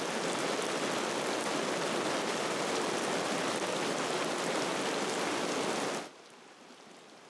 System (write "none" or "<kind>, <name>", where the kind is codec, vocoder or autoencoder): none